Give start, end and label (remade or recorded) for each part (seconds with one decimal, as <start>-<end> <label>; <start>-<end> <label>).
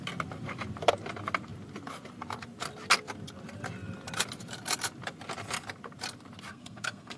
0.0-6.5 recorded; 6.5-7.2 remade